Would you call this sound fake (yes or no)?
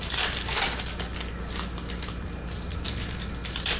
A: no